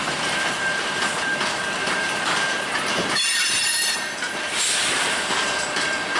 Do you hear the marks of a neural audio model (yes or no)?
yes